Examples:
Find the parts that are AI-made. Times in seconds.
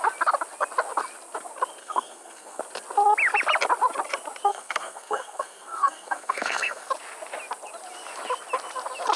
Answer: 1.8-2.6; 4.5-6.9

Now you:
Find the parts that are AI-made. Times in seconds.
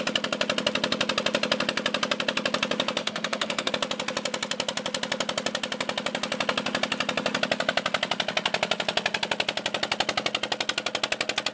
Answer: 3.0-3.7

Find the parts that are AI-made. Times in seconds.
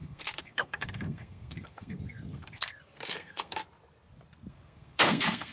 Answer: 0.0-3.6; 4.5-5.5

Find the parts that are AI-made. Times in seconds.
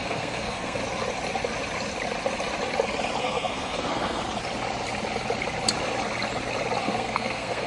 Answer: 0.0-0.8; 3.2-4.2; 6.8-7.7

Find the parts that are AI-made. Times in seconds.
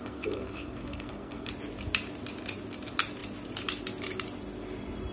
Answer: 0.0-1.5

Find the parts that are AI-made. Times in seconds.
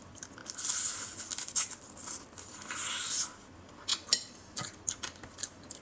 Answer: none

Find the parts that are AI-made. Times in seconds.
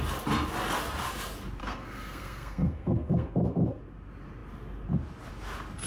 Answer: 1.6-3.8